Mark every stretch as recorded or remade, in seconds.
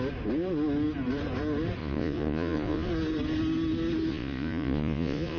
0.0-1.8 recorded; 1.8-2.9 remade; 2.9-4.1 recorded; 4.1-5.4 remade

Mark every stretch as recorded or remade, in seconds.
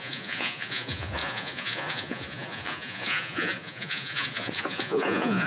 0.0-5.5 remade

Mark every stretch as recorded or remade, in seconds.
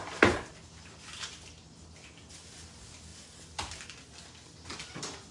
0.0-5.3 recorded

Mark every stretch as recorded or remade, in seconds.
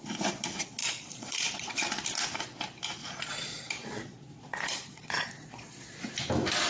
0.0-0.8 recorded; 0.8-1.9 remade; 1.9-3.0 recorded; 3.0-5.9 remade; 5.9-6.7 recorded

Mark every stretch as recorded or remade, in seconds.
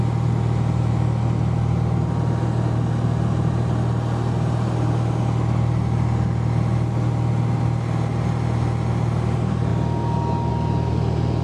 0.0-11.4 recorded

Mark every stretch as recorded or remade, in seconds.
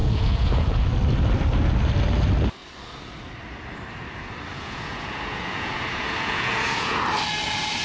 0.0-0.8 remade; 0.8-4.5 recorded; 4.5-7.0 remade; 7.0-7.8 recorded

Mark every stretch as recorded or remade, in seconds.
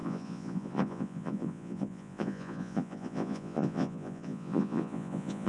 0.0-5.5 remade